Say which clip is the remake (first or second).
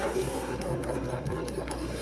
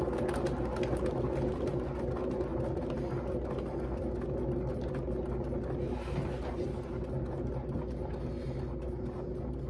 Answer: first